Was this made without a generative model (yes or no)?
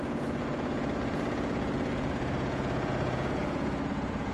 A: no